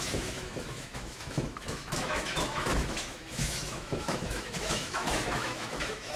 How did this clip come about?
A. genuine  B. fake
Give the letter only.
B